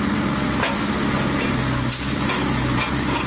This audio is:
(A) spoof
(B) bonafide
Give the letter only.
B